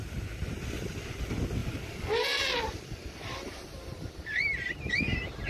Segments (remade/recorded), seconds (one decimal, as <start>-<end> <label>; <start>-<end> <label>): 0.0-1.6 recorded; 1.6-4.9 remade; 4.9-5.5 recorded